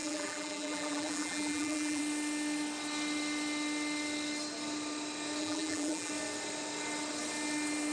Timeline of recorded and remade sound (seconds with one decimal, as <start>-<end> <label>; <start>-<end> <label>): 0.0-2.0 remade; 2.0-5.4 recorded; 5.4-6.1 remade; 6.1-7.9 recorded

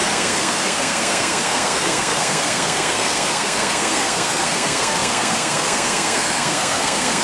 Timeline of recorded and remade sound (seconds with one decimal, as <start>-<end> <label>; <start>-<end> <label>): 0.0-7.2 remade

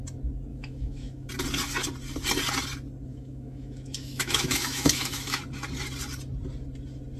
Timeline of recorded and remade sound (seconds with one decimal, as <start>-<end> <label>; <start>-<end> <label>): 0.0-0.5 recorded; 0.5-1.3 remade; 1.3-3.1 recorded; 3.1-5.4 remade; 5.4-7.2 recorded

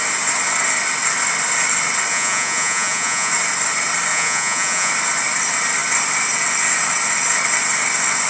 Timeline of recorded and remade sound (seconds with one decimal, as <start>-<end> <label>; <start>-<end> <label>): 0.0-2.1 recorded; 2.1-3.3 remade; 3.3-4.1 recorded; 4.1-4.9 remade; 4.9-8.3 recorded